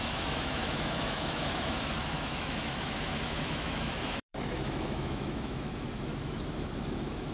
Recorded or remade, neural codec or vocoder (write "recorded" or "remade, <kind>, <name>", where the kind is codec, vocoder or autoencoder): remade, autoencoder, DAC-VAE